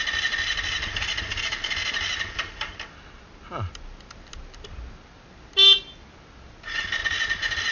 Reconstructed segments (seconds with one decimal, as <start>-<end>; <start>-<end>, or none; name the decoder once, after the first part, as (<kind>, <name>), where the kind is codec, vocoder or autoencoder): none